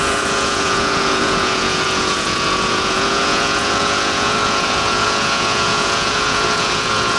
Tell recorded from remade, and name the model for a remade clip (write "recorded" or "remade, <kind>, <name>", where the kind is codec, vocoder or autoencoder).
remade, vocoder, Vocos